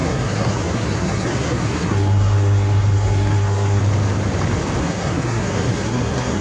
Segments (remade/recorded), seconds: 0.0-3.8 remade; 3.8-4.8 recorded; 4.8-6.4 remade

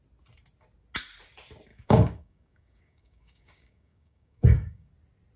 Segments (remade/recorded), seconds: 0.0-1.7 recorded; 1.7-4.9 remade; 4.9-5.4 recorded

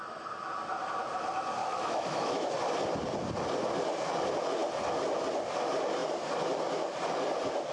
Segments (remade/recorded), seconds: 0.0-1.6 recorded; 1.6-2.5 remade; 2.5-7.7 recorded

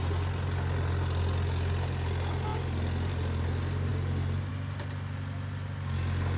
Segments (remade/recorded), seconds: 0.0-6.4 recorded

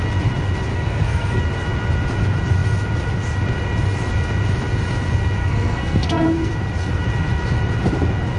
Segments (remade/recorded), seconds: 0.0-0.7 recorded; 0.7-1.4 remade; 1.4-5.4 recorded; 5.4-6.5 remade; 6.5-8.4 recorded

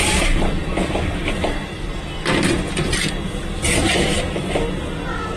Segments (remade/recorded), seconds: 0.0-0.6 remade; 0.6-1.2 recorded; 1.2-2.0 remade; 2.0-5.4 recorded